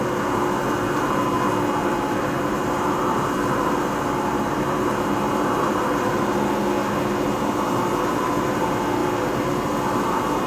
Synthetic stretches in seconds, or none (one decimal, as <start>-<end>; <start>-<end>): 1.8-3.0; 3.8-5.8